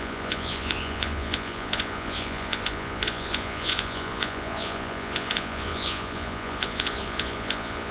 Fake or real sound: fake